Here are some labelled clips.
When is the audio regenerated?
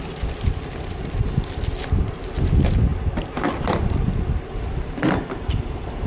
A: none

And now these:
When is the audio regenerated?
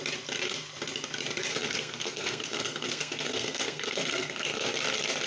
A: 1.5-4.7 (codec, SNAC)